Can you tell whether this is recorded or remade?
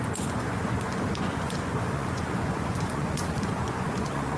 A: remade